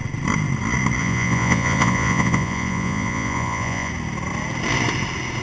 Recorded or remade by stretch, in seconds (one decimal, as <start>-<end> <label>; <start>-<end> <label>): 0.0-1.0 recorded; 1.0-3.9 remade; 3.9-5.4 recorded